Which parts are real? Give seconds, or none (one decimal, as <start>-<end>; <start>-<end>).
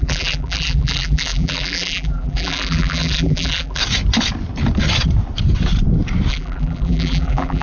3.8-6.3